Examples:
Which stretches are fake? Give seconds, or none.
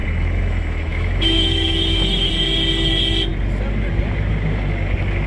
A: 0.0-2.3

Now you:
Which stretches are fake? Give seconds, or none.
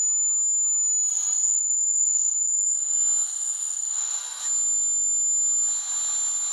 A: 1.1-4.4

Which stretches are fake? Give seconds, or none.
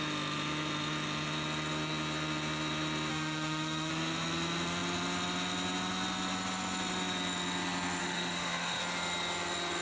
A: 3.1-3.9; 8.0-8.8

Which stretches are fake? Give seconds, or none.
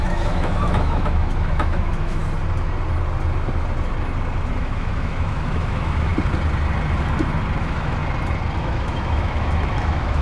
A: 0.0-2.2; 4.6-6.1; 7.6-8.0; 8.6-10.2